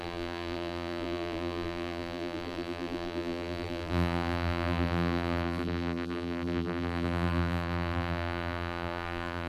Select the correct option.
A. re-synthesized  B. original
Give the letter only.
A